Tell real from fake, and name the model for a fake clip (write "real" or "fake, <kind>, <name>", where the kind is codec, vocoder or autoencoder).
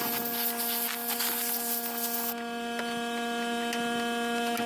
real